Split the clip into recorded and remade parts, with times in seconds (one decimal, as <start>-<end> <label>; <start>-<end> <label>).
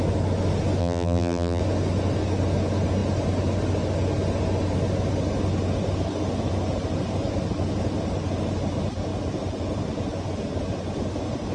0.0-0.8 recorded; 0.8-1.6 remade; 1.6-11.5 recorded